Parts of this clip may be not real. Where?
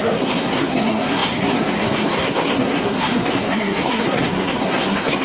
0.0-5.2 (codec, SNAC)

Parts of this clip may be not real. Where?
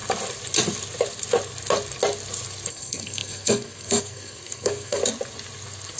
2.7-5.0 (codec, SNAC)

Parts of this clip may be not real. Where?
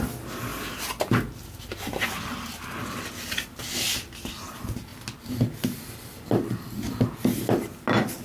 none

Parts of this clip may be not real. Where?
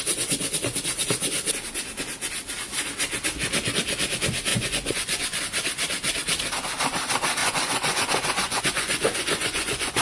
4.5-5.4 (vocoder, Vocos); 7.4-10.0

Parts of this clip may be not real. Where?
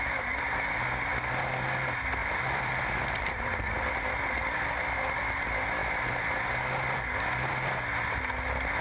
2.2-3.6 (vocoder, BigVGAN v2)